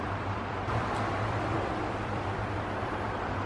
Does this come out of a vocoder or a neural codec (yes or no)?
yes